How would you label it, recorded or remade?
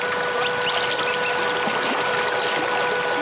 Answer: recorded